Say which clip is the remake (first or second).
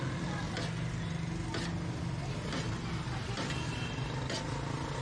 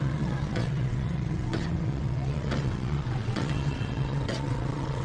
second